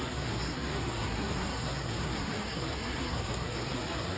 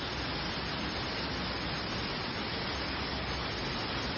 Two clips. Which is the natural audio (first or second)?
second